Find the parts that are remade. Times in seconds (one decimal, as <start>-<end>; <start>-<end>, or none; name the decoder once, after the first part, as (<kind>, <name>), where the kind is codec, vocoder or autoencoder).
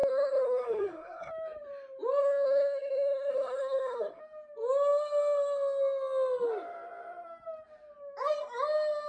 0.0-1.3 (codec, SNAC); 2.2-4.2